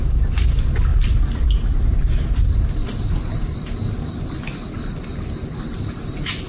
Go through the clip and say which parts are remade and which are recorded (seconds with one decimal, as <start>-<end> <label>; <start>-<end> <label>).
0.0-6.5 recorded